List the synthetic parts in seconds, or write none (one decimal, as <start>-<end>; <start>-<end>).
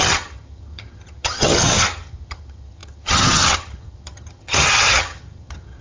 0.0-5.8